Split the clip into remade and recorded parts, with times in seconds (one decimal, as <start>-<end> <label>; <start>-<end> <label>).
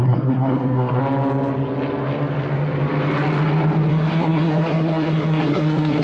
0.0-1.0 remade; 1.0-3.9 recorded; 3.9-6.0 remade